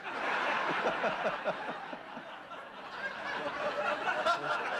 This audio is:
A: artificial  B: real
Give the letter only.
B